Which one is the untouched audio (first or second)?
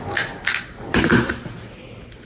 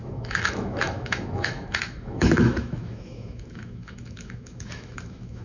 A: first